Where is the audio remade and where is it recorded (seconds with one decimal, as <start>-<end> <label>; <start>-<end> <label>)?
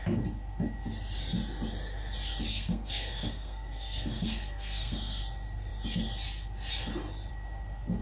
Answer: 0.0-2.5 recorded; 2.5-5.2 remade; 5.2-8.0 recorded